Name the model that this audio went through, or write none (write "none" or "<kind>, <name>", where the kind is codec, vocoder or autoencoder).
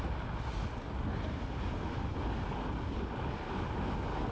none